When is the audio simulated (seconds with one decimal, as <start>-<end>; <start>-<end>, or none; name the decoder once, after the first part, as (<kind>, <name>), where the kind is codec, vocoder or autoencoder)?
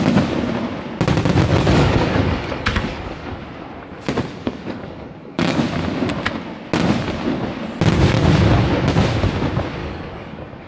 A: 1.5-3.4 (codec, DAC); 4.4-5.6; 9.8-10.7